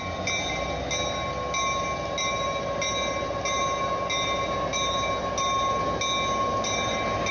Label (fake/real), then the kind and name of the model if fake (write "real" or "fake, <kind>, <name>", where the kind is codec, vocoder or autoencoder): real